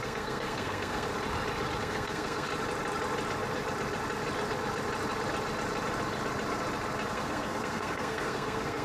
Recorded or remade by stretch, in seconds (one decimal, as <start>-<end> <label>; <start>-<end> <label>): 0.0-1.1 remade; 1.1-1.8 recorded; 1.8-2.5 remade; 2.5-7.1 recorded; 7.1-8.8 remade